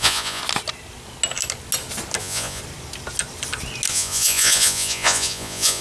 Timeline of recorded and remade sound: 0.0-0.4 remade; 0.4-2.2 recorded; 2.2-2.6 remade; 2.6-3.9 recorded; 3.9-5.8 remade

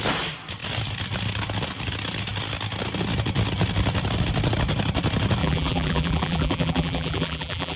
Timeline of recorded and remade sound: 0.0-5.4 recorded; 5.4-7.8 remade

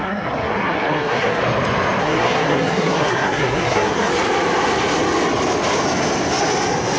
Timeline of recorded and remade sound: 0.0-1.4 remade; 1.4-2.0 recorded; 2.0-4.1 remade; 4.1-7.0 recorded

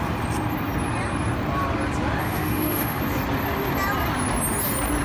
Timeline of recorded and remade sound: 0.0-2.2 recorded; 2.2-3.0 remade; 3.0-5.0 recorded

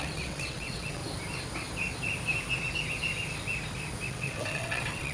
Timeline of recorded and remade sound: 0.0-1.0 remade; 1.0-4.1 recorded; 4.1-5.1 remade

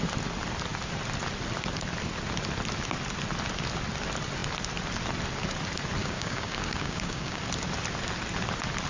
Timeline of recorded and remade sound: 0.0-6.0 recorded; 6.0-7.4 remade; 7.4-8.9 recorded

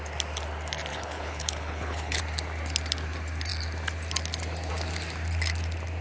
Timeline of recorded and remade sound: 0.0-0.9 recorded; 0.9-2.2 remade; 2.2-6.0 recorded

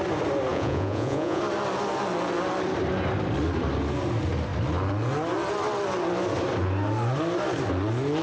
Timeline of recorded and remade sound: 0.0-0.5 recorded; 0.5-1.4 remade; 1.4-8.2 recorded